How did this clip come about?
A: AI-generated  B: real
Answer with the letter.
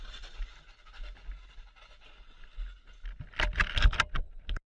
B